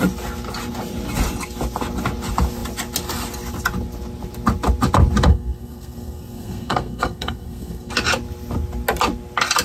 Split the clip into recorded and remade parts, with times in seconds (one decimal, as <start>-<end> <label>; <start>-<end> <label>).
0.0-5.3 recorded; 5.3-7.9 remade; 7.9-9.6 recorded